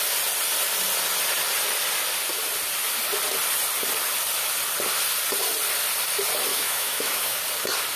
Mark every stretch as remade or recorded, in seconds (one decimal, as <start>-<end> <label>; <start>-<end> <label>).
0.0-6.5 recorded; 6.5-7.4 remade; 7.4-8.0 recorded